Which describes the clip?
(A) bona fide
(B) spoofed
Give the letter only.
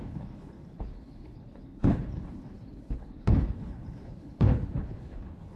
B